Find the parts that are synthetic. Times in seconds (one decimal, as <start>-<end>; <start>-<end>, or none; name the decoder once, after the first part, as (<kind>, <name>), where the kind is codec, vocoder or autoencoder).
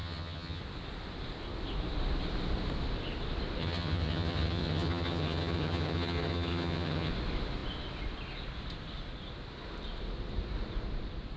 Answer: 0.0-0.6 (vocoder, HiFi-GAN); 3.6-7.1